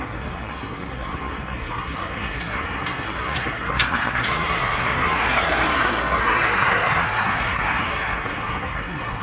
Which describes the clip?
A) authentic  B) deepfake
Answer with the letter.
B